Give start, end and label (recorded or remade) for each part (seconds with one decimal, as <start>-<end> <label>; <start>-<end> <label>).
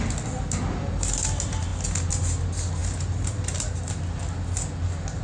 0.0-5.2 recorded